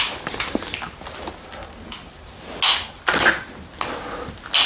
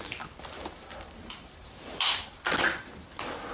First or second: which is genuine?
first